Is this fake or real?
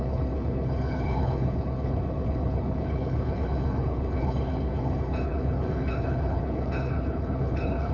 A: fake